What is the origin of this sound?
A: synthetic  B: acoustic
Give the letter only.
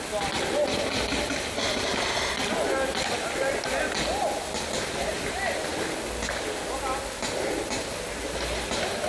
B